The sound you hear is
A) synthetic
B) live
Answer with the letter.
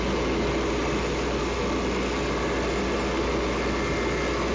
B